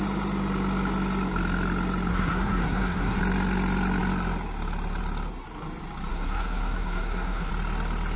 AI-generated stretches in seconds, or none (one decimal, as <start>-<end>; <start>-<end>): 2.1-3.2; 6.1-7.5